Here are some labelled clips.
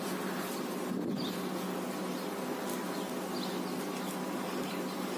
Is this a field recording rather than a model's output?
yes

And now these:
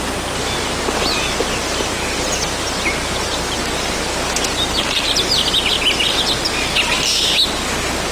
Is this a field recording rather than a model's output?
yes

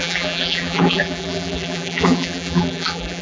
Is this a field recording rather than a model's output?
no